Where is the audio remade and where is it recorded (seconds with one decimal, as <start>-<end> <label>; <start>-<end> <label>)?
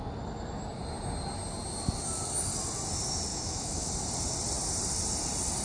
0.0-3.3 recorded; 3.3-3.9 remade; 3.9-5.6 recorded